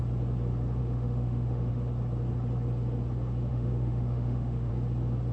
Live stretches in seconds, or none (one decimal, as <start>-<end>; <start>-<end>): 0.0-0.8; 1.7-3.5; 4.7-5.3